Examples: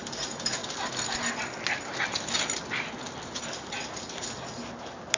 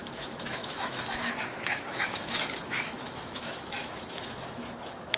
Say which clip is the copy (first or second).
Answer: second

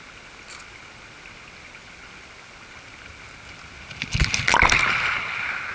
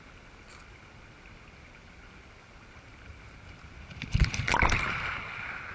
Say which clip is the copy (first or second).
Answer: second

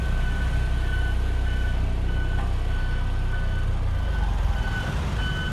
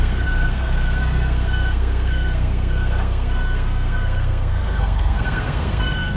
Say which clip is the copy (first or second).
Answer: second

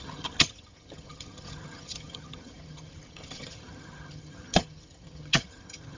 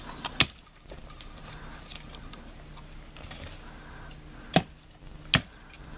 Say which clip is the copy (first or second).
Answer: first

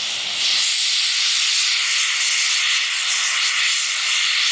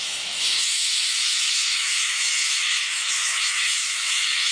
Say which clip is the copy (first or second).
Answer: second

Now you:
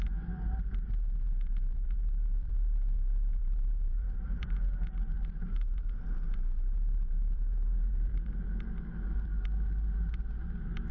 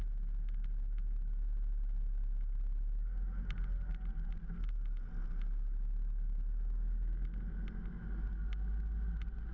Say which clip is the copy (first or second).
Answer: first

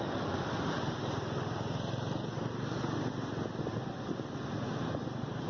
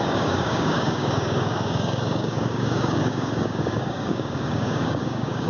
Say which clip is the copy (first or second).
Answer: second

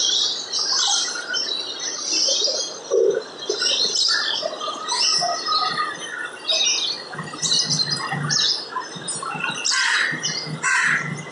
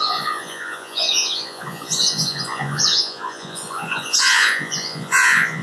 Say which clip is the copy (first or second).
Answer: second